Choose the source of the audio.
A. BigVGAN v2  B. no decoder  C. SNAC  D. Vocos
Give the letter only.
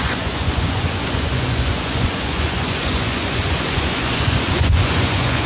D